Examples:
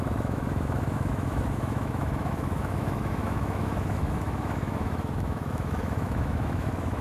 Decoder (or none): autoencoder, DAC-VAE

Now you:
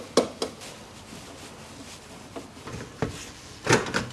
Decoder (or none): none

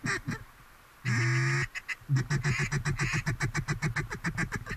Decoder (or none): none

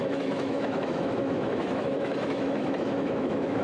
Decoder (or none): autoencoder, DAC-VAE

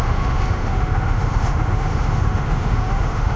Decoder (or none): autoencoder, DAC-VAE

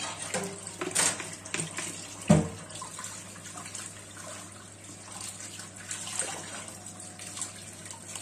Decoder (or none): none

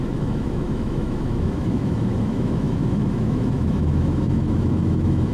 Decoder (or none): autoencoder, DAC-VAE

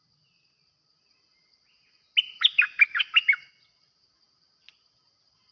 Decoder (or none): none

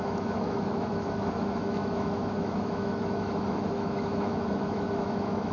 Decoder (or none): autoencoder, DAC-VAE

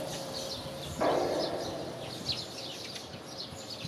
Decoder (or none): none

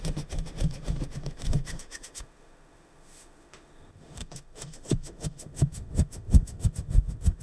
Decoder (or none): autoencoder, DAC-VAE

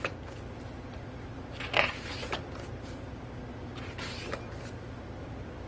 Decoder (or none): none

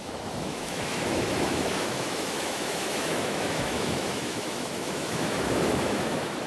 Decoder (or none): autoencoder, DAC-VAE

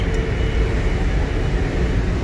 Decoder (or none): none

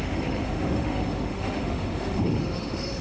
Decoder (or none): autoencoder, DAC-VAE